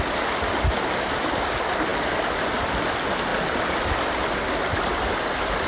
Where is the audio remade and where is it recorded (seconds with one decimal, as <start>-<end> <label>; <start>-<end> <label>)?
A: 0.0-5.7 recorded